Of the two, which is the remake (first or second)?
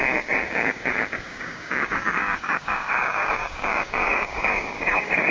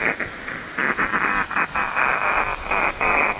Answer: first